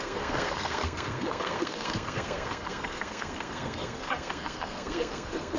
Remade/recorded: remade